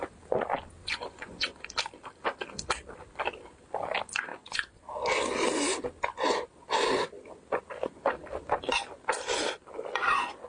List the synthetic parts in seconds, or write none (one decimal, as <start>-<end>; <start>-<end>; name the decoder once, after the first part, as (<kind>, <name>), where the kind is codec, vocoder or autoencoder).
0.8-1.6 (vocoder, Vocos); 4.3-4.8